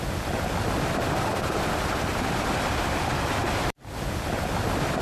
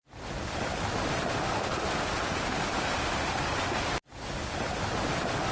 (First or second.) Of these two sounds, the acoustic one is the second